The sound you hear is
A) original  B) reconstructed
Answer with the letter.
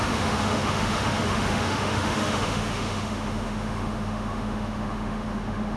B